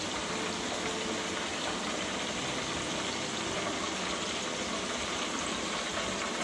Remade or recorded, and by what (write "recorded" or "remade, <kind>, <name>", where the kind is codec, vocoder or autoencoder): recorded